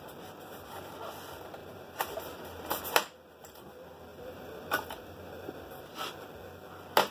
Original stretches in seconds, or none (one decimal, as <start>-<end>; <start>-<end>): 0.0-1.6; 2.8-4.1; 5.5-7.1